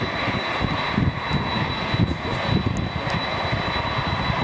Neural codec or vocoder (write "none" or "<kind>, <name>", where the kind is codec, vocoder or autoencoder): none